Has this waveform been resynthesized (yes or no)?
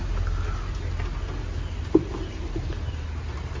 no